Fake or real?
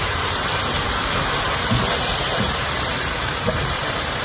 fake